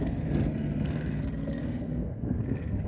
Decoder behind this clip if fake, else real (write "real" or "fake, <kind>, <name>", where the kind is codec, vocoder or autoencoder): fake, codec, SNAC